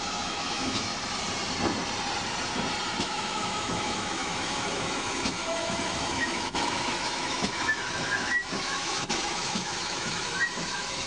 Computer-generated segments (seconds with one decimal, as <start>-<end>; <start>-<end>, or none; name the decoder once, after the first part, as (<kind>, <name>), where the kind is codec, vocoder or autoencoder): 0.0-0.9 (autoencoder, DAC-VAE); 3.0-11.1